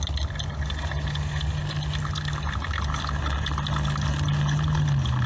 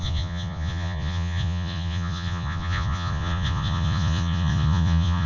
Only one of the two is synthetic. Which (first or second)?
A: second